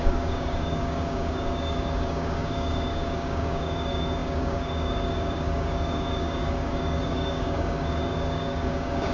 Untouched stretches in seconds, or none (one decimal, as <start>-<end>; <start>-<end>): none